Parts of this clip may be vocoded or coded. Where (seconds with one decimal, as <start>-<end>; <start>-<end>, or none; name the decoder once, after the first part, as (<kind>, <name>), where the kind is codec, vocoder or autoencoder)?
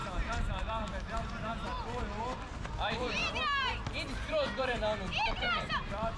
0.0-1.5 (vocoder, BigVGAN v2); 2.2-3.2; 4.6-6.2